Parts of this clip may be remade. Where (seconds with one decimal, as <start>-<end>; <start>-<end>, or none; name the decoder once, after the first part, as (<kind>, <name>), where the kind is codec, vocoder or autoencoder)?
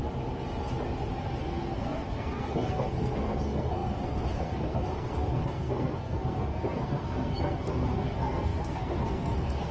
1.4-9.7 (codec, SNAC)